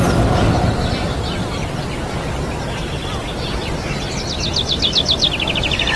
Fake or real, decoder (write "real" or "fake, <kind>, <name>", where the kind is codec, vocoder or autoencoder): real